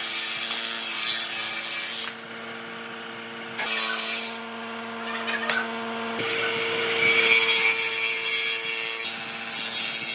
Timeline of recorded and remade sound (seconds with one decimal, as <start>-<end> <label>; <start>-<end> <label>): 0.0-10.1 recorded